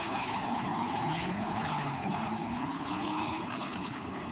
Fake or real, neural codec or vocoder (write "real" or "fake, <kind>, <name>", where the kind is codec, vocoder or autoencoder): fake, codec, HILCodec